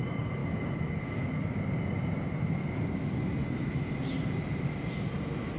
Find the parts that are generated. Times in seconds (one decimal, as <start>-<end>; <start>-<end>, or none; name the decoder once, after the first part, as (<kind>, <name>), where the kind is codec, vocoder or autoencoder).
none